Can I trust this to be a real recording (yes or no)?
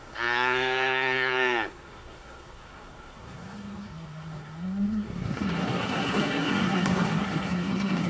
no